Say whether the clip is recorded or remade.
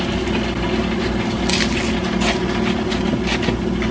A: recorded